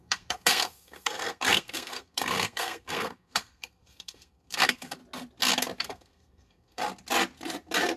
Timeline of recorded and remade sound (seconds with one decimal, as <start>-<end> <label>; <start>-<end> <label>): 0.0-5.0 remade; 5.0-5.8 recorded; 5.8-6.8 remade; 6.8-8.0 recorded